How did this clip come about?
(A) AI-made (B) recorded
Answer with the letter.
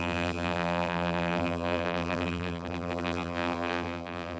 A